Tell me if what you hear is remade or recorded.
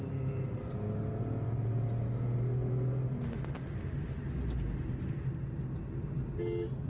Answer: recorded